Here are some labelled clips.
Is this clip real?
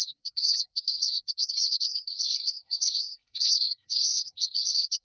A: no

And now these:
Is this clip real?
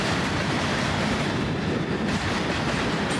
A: yes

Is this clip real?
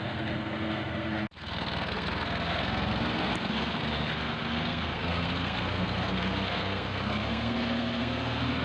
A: no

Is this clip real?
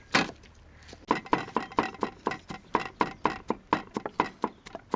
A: yes